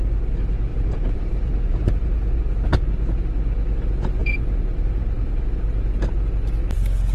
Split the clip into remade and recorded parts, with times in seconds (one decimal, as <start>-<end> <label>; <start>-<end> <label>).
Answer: 0.0-0.7 recorded; 0.7-2.4 remade; 2.4-4.2 recorded; 4.2-5.4 remade; 5.4-7.1 recorded